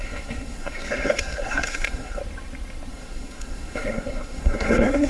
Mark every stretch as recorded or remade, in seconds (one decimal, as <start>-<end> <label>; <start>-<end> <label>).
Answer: 0.0-2.2 remade; 2.2-2.9 recorded; 2.9-5.1 remade